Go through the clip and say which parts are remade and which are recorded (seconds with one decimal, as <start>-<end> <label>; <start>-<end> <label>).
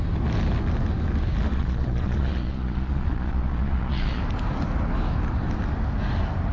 0.0-1.5 recorded; 1.5-4.2 remade; 4.2-6.5 recorded